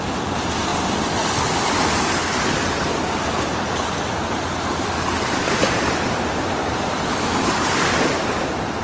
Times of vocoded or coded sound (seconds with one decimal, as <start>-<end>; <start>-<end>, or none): 0.0-0.7; 1.4-2.2; 4.9-6.6; 7.4-8.8